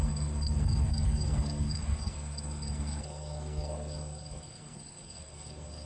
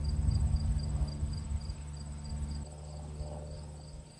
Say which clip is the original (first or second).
second